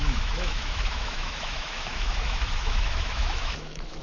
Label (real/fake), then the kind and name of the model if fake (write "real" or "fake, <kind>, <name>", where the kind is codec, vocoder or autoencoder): fake, autoencoder, DAC-VAE